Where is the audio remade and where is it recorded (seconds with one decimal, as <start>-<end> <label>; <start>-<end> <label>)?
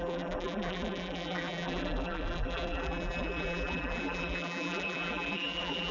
0.0-5.9 remade